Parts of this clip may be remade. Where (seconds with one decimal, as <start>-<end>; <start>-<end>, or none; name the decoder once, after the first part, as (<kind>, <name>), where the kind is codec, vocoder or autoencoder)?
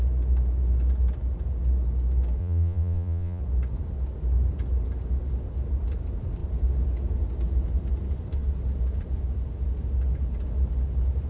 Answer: 2.4-3.4 (vocoder, Vocos)